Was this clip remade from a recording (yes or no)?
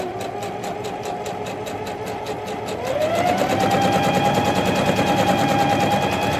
no